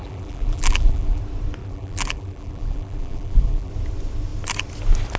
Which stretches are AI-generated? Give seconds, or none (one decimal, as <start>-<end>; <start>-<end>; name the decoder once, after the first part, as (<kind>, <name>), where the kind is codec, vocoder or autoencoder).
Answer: 0.0-1.2 (vocoder, BigVGAN v2); 1.6-3.7